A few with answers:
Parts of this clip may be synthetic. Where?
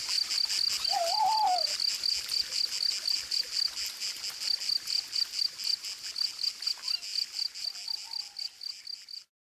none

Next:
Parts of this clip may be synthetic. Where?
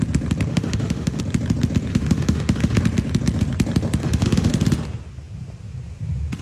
0.5-1.2 (autoencoder, DAC-VAE); 1.9-2.8; 4.0-4.5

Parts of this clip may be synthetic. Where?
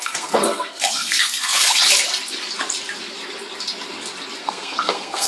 0.0-1.8 (codec, SNAC); 4.4-5.3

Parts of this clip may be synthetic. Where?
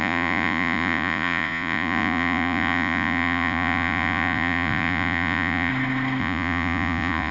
0.0-5.7 (vocoder, Vocos); 6.2-7.3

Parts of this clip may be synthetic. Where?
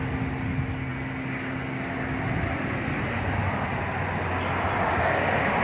none